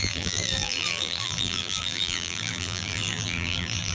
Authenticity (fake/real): fake